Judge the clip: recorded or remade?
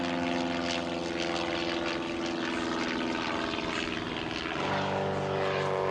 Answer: recorded